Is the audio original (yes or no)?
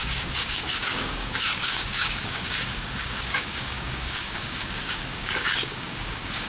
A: no